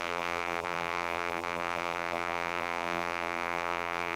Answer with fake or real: fake